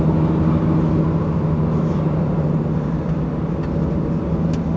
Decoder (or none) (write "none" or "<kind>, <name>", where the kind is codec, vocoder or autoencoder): none